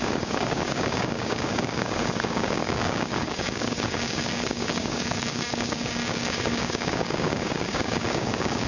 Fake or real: fake